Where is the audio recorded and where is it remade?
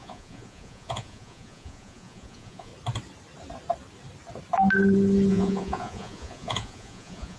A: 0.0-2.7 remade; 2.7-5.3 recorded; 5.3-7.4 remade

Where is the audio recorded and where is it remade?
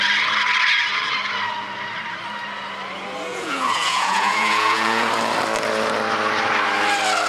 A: 0.0-3.3 recorded; 3.3-5.1 remade; 5.1-7.3 recorded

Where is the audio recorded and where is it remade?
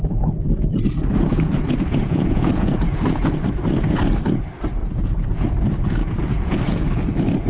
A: 0.0-1.3 recorded; 1.3-3.3 remade; 3.3-4.8 recorded; 4.8-5.5 remade; 5.5-6.0 recorded; 6.0-6.8 remade; 6.8-7.5 recorded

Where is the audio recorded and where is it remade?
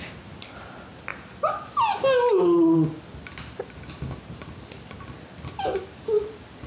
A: 0.0-6.7 recorded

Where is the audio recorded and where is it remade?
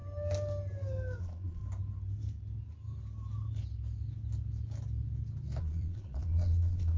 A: 0.0-1.2 recorded; 1.2-1.6 remade; 1.6-5.6 recorded; 5.6-7.0 remade